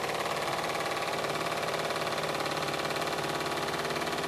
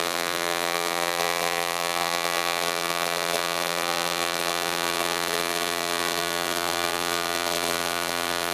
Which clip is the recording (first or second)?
first